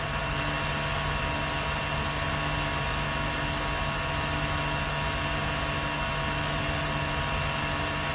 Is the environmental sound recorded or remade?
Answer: recorded